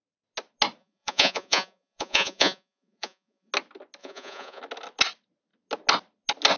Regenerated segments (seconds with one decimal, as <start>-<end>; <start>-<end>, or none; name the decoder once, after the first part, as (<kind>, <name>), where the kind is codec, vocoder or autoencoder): 0.8-3.5 (vocoder, Vocos); 4.0-4.6